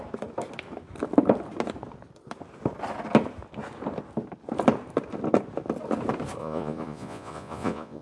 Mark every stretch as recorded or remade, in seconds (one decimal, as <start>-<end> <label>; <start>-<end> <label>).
0.0-6.4 recorded; 6.4-8.0 remade